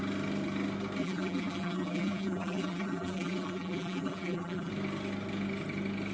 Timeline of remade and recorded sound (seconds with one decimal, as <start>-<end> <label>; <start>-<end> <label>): 0.0-1.0 recorded; 1.0-4.7 remade; 4.7-6.1 recorded